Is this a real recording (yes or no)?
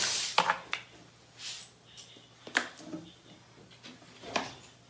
yes